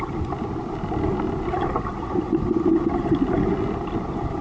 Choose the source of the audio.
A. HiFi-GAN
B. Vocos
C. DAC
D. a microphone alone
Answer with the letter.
D